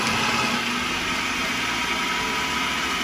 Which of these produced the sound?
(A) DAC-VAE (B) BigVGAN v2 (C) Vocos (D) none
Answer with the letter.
D